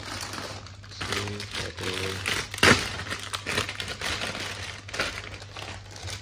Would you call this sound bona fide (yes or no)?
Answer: yes